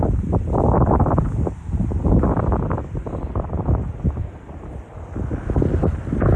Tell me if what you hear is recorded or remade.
recorded